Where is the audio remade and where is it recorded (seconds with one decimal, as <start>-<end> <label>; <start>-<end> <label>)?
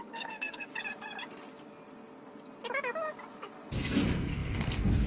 0.0-0.7 remade; 0.7-3.8 recorded; 3.8-5.1 remade